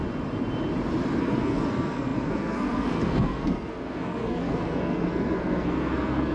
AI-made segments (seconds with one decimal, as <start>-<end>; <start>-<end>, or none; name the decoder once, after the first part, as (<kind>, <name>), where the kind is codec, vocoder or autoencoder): 1.2-6.3 (codec, SNAC)